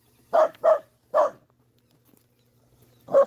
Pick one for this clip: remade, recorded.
remade